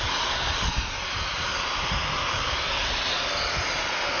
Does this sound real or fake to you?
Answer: real